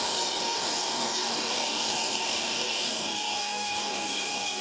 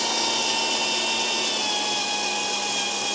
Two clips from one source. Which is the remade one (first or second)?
first